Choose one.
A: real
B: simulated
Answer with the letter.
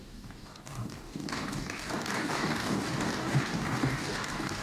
B